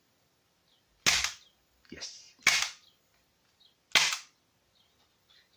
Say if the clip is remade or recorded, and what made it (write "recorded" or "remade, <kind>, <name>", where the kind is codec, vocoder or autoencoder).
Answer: recorded